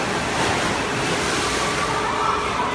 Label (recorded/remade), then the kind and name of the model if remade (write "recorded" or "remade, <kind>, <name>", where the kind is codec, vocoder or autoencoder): recorded